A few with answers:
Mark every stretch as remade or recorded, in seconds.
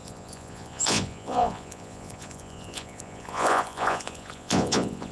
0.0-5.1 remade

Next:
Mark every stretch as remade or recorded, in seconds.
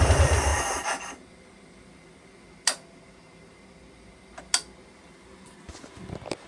0.0-6.5 recorded